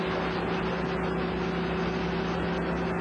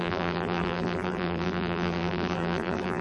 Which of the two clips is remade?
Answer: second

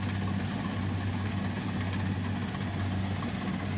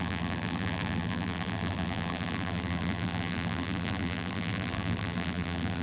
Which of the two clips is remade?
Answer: second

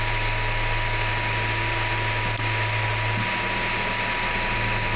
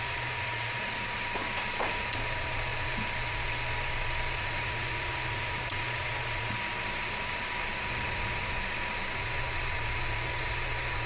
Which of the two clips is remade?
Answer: second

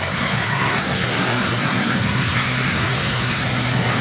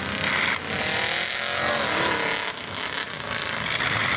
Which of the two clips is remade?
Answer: first